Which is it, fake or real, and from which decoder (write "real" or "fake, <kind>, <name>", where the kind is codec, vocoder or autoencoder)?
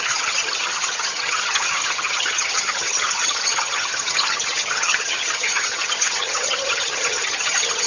fake, vocoder, HiFi-GAN